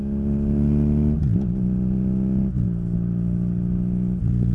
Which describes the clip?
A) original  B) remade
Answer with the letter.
A